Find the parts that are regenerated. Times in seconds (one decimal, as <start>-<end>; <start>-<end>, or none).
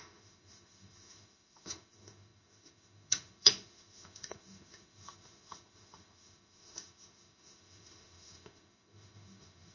0.0-9.7